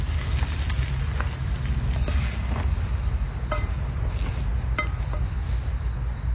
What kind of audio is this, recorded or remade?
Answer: recorded